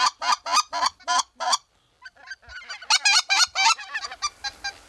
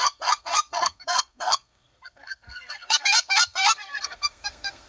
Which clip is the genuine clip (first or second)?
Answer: first